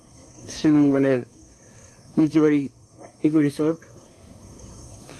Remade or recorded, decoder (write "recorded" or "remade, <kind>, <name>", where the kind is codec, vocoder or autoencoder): remade, codec, SNAC